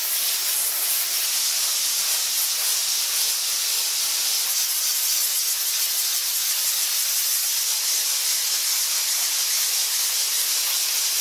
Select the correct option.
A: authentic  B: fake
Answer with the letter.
A